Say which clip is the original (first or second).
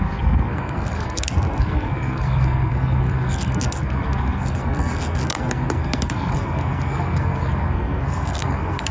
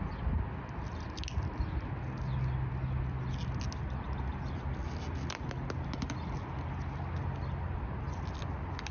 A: second